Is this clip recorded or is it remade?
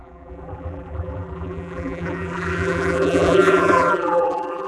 remade